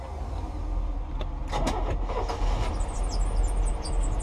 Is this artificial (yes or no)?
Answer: no